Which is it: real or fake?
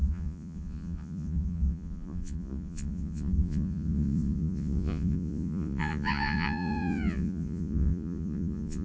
fake